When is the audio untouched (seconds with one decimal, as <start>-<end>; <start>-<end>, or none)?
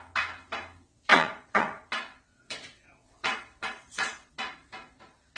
0.0-1.1; 4.3-5.4